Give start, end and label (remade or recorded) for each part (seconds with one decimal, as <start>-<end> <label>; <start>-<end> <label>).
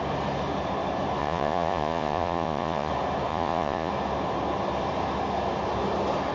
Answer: 0.0-1.2 recorded; 1.2-2.9 remade; 2.9-3.3 recorded; 3.3-3.9 remade; 3.9-6.3 recorded